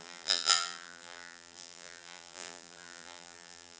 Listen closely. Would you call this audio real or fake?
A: fake